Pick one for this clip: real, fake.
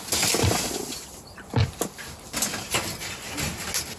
real